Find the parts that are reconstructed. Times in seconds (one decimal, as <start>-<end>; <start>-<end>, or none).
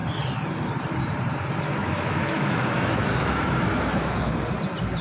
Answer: 1.8-4.3